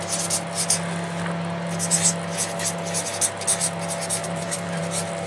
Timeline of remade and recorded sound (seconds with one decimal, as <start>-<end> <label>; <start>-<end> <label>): 0.0-4.2 recorded; 4.2-4.8 remade; 4.8-5.3 recorded